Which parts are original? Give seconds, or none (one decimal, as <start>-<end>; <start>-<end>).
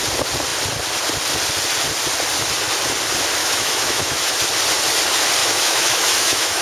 0.0-3.4; 4.3-5.4